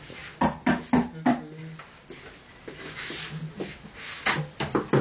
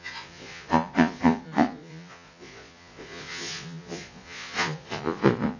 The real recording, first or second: first